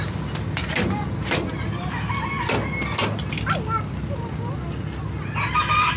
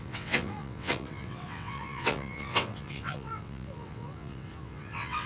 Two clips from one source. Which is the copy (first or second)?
second